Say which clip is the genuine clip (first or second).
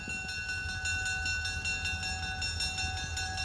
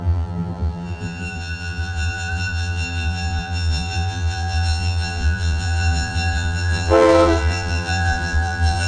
first